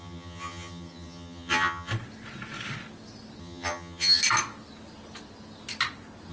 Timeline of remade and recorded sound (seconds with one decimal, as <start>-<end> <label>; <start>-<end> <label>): 0.0-1.9 remade; 1.9-3.4 recorded; 3.4-4.2 remade; 4.2-6.3 recorded